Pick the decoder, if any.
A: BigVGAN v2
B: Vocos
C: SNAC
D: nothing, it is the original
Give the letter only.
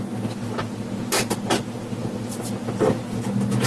D